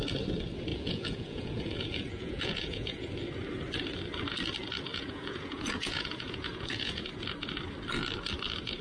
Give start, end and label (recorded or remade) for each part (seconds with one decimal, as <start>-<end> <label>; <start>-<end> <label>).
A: 0.0-0.7 recorded; 0.7-3.1 remade; 3.1-4.9 recorded; 4.9-7.1 remade; 7.1-8.8 recorded